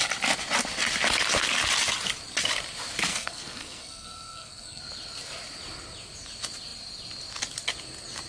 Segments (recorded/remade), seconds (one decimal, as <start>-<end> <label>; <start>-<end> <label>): 0.0-3.1 recorded; 3.1-4.8 remade; 4.8-8.3 recorded